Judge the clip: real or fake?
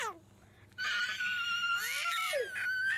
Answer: real